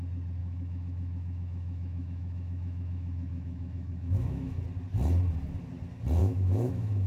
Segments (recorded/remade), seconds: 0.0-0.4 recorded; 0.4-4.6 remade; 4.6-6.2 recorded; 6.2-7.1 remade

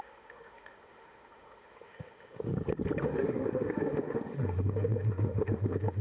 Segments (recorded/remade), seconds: 0.0-2.5 remade; 2.5-3.0 recorded; 3.0-6.0 remade

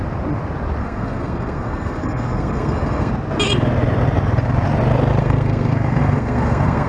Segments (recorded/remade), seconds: 0.0-0.8 recorded; 0.8-3.1 remade; 3.1-5.2 recorded; 5.2-6.9 remade

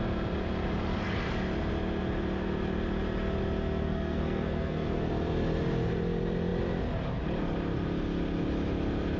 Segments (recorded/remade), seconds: 0.0-3.8 recorded; 3.8-5.1 remade; 5.1-9.2 recorded

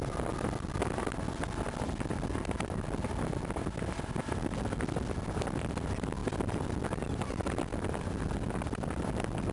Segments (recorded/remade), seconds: 0.0-9.5 recorded

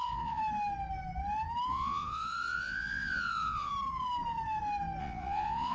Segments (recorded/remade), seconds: 0.0-0.4 remade; 0.4-1.7 recorded; 1.7-3.7 remade; 3.7-5.0 recorded; 5.0-5.7 remade